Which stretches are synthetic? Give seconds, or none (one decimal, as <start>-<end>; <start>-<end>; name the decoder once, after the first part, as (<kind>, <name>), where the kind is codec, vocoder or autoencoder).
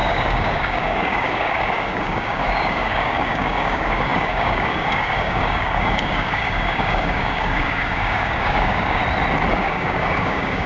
0.0-9.0 (codec, DAC); 9.5-10.7